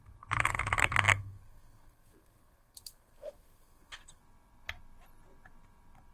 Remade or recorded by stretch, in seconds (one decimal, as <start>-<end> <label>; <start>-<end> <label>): 0.0-0.5 recorded; 0.5-4.2 remade; 4.2-6.1 recorded